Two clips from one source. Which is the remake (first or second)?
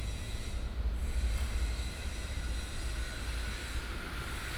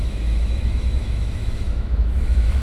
second